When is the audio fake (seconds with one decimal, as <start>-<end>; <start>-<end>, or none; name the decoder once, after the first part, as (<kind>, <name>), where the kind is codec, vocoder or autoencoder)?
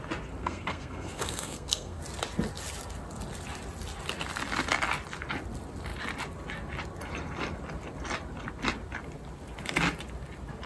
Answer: 0.4-2.0 (codec, SNAC)